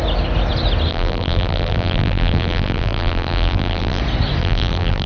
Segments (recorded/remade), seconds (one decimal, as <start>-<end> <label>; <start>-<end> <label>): 0.0-0.9 recorded; 0.9-4.0 remade; 4.0-4.4 recorded; 4.4-5.1 remade